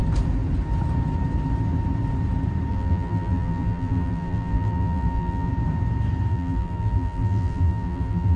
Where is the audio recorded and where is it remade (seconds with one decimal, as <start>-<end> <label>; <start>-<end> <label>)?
0.0-2.7 recorded; 2.7-5.5 remade; 5.5-6.3 recorded; 6.3-8.4 remade